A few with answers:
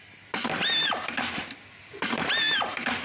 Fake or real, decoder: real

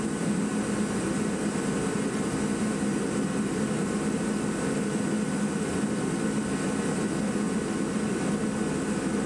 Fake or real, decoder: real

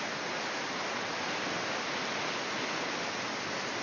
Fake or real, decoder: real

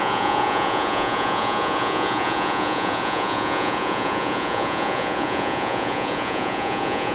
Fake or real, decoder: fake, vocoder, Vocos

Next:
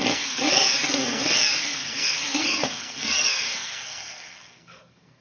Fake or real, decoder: fake, codec, SNAC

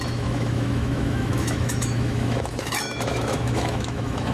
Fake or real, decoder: fake, autoencoder, DAC-VAE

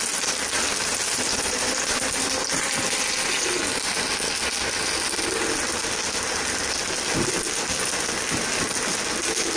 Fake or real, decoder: real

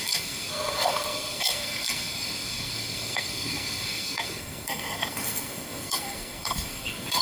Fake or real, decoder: fake, codec, SNAC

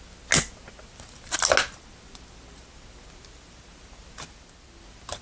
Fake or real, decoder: real